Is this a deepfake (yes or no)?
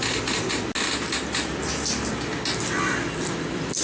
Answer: no